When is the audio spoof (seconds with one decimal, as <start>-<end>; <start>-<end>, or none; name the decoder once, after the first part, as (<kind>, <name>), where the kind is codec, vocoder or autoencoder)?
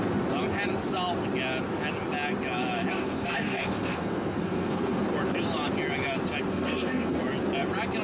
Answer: 2.9-5.0 (codec, SNAC); 6.5-7.2